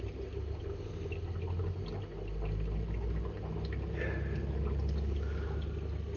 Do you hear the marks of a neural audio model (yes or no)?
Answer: no